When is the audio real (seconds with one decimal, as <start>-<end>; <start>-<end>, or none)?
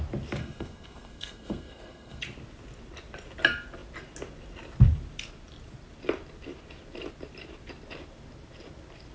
0.0-0.4; 2.2-9.1